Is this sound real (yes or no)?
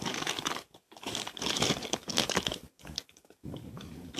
no